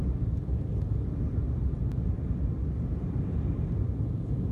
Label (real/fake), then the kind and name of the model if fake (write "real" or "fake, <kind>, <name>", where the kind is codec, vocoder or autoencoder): real